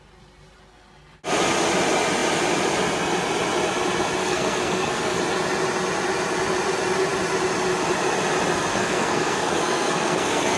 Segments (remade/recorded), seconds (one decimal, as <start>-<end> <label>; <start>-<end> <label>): 0.0-4.2 recorded; 4.2-5.2 remade; 5.2-8.7 recorded; 8.7-10.6 remade